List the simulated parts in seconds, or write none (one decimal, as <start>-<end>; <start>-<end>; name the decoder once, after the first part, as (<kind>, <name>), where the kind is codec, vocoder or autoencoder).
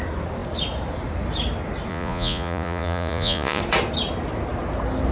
1.9-3.6 (vocoder, Vocos)